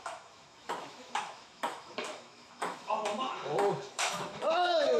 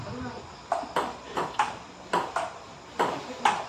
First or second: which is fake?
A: first